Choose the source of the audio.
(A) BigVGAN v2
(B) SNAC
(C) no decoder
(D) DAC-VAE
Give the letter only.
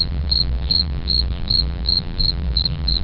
A